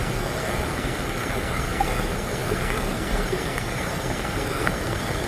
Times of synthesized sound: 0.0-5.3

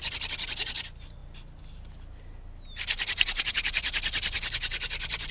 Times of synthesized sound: none

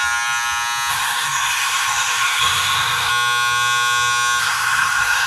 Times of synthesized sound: 0.9-3.1; 4.4-5.3

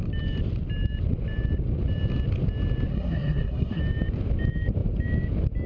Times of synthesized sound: 2.9-3.8

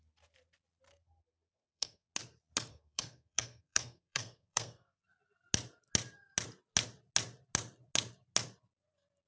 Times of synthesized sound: 0.9-2.1; 2.7-5.0

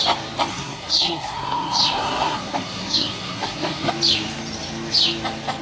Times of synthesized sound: 0.5-3.9

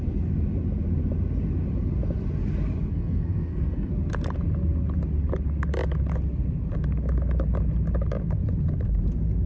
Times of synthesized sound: 2.9-3.9

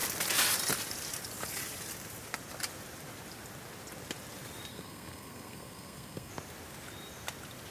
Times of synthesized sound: 4.7-6.3